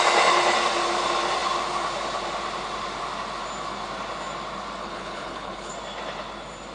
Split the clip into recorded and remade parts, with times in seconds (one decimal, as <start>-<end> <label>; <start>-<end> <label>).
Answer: 0.0-4.8 recorded; 4.8-5.7 remade; 5.7-6.7 recorded

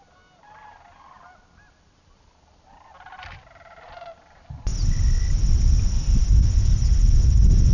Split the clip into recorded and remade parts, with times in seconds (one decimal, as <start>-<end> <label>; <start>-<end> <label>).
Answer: 0.0-7.7 recorded

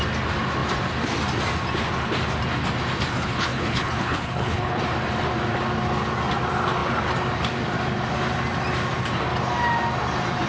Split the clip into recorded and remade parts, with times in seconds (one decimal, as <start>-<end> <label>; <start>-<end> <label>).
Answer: 0.0-3.1 recorded; 3.1-4.8 remade; 4.8-10.5 recorded

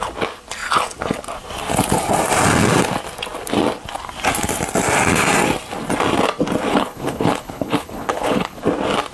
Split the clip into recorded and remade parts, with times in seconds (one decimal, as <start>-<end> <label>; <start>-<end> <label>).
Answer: 0.0-6.7 recorded; 6.7-8.6 remade; 8.6-9.1 recorded

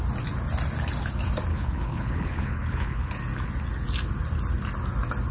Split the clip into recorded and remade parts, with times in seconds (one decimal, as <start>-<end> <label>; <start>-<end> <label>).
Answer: 0.0-1.5 recorded; 1.5-3.1 remade; 3.1-5.3 recorded

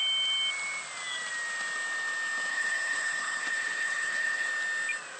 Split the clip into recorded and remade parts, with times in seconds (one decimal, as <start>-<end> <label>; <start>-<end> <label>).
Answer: 0.0-2.5 recorded; 2.5-4.5 remade; 4.5-5.2 recorded

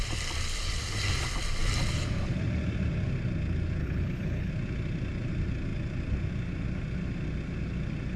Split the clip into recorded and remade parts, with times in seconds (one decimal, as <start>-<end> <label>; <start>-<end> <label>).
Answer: 0.0-3.8 recorded; 3.8-4.5 remade; 4.5-8.2 recorded